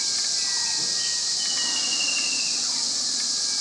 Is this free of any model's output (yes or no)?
yes